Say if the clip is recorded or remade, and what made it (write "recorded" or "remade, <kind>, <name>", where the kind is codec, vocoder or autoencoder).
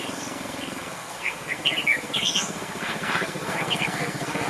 remade, codec, SNAC